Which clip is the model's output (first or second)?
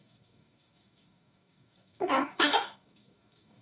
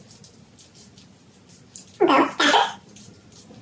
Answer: first